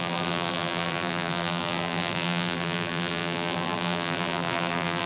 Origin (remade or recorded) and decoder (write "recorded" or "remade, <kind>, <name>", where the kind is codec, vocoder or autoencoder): remade, vocoder, BigVGAN v2